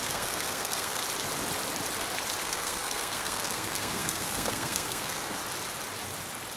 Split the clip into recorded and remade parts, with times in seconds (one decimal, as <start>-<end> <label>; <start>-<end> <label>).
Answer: 0.0-1.0 remade; 1.0-2.4 recorded; 2.4-5.4 remade; 5.4-6.6 recorded